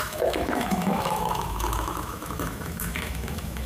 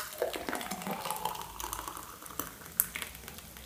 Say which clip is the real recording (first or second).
second